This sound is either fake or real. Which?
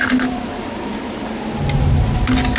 real